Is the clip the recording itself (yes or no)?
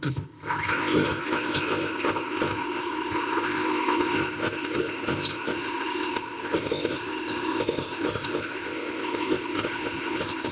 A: no